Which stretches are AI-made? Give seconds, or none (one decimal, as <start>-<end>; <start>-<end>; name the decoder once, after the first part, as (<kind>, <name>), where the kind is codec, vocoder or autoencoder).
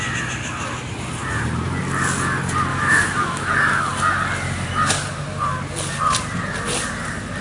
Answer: 2.7-3.5 (autoencoder, DAC-VAE)